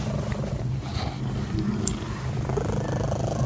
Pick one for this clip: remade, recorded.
recorded